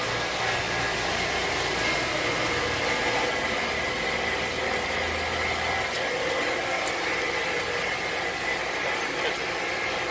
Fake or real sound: real